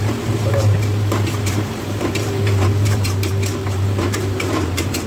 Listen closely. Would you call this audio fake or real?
fake